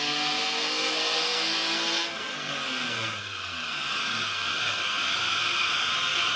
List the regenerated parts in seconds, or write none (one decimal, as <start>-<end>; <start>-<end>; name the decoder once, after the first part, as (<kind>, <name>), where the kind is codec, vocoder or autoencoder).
0.0-6.4 (codec, SNAC)